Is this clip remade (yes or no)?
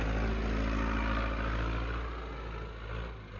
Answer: no